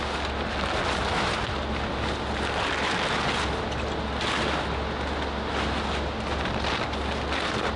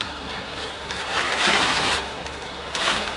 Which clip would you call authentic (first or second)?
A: first